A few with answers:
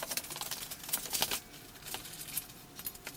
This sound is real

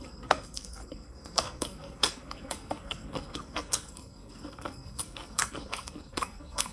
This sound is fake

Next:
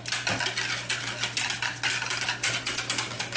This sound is real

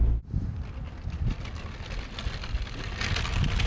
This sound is real